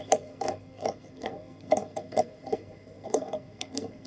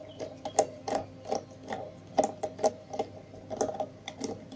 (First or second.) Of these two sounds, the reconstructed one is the first